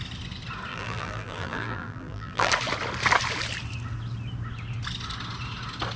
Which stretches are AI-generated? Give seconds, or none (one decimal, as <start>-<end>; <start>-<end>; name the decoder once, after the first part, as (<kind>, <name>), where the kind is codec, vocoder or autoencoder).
0.7-2.5 (vocoder, BigVGAN v2)